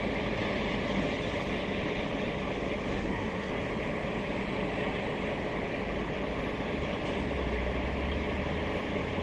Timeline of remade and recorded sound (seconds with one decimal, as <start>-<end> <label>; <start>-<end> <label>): 0.0-2.9 recorded; 2.9-3.5 remade; 3.5-9.2 recorded